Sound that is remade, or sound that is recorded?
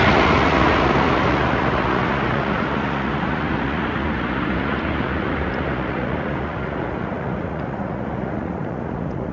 remade